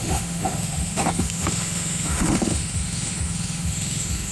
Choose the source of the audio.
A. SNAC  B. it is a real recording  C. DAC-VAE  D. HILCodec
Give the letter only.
C